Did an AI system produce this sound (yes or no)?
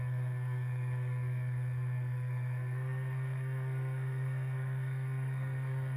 yes